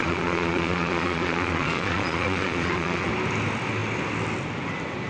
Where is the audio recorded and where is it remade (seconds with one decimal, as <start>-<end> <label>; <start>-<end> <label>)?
0.0-3.1 remade; 3.1-5.1 recorded